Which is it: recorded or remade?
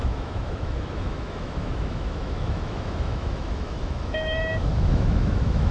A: remade